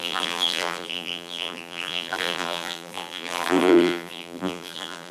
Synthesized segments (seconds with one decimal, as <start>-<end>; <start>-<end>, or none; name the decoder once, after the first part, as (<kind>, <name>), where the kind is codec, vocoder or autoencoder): 0.0-5.1 (vocoder, BigVGAN v2)